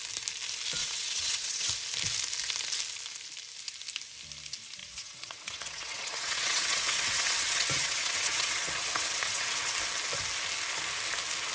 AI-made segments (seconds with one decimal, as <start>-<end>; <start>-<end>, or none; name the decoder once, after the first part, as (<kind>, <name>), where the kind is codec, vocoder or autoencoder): 0.8-1.7 (vocoder, WaveNeXt); 4.8-9.7